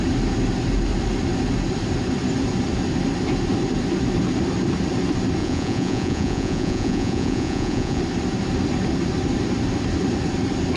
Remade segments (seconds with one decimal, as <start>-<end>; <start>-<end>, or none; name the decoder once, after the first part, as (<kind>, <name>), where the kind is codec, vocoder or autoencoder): 5.4-8.0 (vocoder, Vocos)